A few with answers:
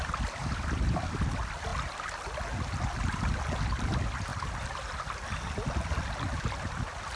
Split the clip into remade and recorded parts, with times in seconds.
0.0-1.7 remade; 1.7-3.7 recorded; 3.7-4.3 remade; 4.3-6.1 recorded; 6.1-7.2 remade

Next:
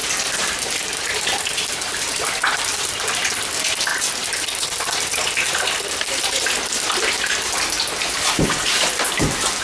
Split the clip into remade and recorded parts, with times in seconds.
0.0-1.6 recorded; 1.6-3.9 remade; 3.9-8.0 recorded; 8.0-9.6 remade

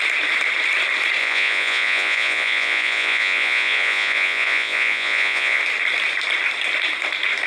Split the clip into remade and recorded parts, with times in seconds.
0.0-1.2 recorded; 1.2-5.6 remade; 5.6-7.5 recorded

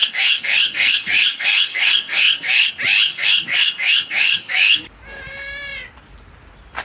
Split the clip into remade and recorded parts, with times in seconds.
0.0-2.7 remade; 2.7-3.1 recorded; 3.1-4.8 remade; 4.8-6.8 recorded

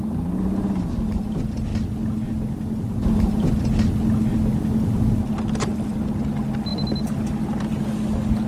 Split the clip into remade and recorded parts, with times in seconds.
0.0-8.5 recorded

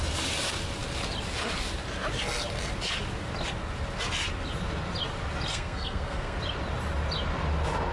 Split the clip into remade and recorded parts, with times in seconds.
0.0-5.5 recorded; 5.5-6.4 remade; 6.4-7.9 recorded